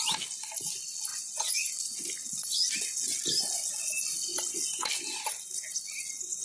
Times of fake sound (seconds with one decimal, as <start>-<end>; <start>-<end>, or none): 1.1-1.7